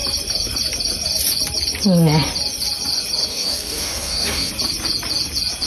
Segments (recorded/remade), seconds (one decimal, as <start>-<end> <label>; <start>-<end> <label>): 0.0-3.3 recorded; 3.3-4.5 remade; 4.5-5.7 recorded